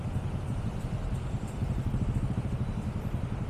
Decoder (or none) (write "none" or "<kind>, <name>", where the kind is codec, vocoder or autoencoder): none